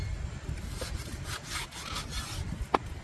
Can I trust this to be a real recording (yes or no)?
yes